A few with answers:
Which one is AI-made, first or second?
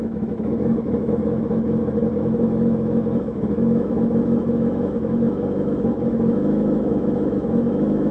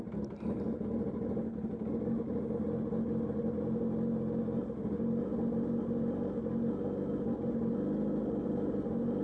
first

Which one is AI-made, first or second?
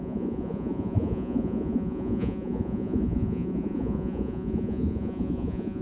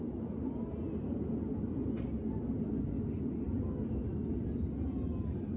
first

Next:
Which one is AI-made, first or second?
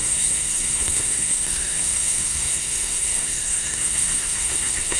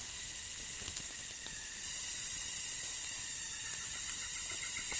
first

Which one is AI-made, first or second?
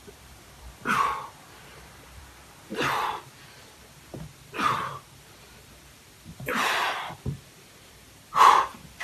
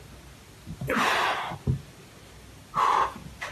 first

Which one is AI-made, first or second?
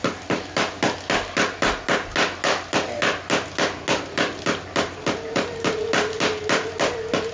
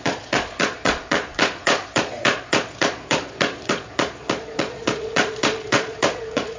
second